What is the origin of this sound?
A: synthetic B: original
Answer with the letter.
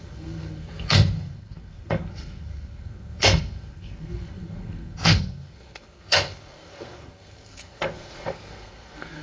A